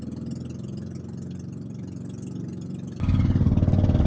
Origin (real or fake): real